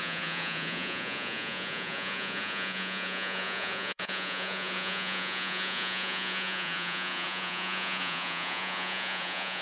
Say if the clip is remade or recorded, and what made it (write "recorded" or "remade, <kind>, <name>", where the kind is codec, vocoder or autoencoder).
remade, vocoder, Vocos